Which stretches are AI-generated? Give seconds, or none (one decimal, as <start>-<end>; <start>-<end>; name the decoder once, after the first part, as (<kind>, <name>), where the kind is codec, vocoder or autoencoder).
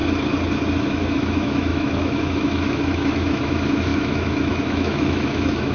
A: 0.8-5.7 (autoencoder, DAC-VAE)